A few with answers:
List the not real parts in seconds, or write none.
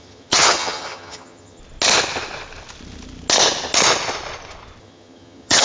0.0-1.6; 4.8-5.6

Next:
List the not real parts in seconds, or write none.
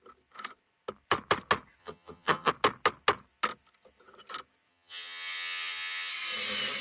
1.8-2.5; 4.7-6.1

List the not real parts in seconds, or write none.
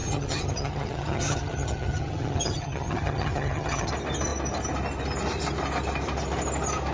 0.0-3.9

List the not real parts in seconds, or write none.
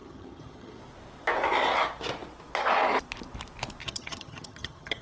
0.0-0.8; 3.8-5.0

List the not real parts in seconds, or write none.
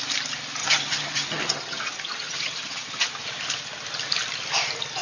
0.6-3.1